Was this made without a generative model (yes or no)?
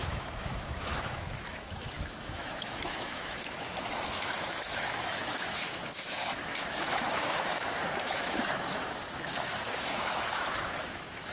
no